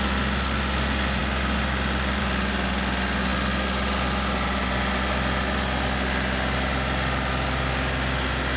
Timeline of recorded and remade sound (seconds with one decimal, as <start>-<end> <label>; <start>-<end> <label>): 0.0-8.6 recorded